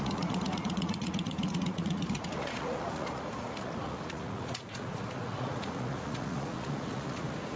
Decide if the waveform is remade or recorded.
remade